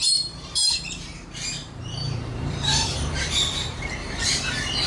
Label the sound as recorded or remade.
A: remade